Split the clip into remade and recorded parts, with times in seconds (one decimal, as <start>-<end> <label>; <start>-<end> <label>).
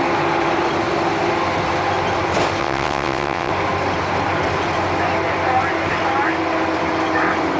0.0-2.6 recorded; 2.6-3.5 remade; 3.5-7.6 recorded